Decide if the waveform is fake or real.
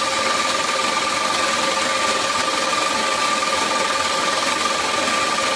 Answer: real